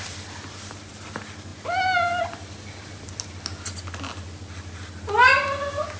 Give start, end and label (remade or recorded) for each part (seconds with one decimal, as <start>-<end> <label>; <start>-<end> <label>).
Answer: 0.0-6.0 recorded